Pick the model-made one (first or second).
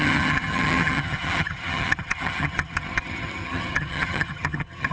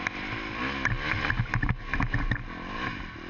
first